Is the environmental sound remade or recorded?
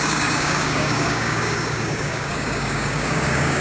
remade